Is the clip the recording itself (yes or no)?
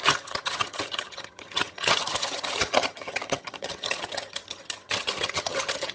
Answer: no